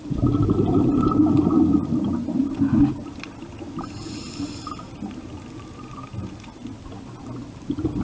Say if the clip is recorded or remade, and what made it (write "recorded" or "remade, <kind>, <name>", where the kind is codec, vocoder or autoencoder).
recorded